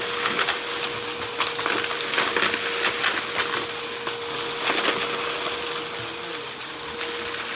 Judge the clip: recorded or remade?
recorded